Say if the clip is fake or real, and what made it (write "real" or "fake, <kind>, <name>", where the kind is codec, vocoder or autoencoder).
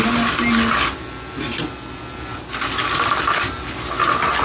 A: real